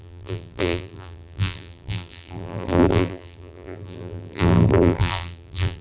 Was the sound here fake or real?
fake